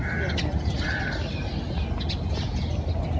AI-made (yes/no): no